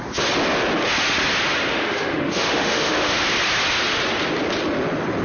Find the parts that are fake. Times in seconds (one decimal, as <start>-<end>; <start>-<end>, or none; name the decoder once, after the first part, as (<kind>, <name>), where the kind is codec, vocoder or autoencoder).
1.7-3.2 (autoencoder, DAC-VAE)